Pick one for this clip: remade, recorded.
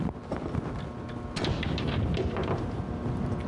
recorded